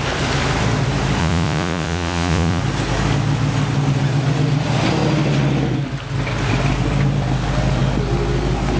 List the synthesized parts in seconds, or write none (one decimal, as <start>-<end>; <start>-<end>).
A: 1.2-2.6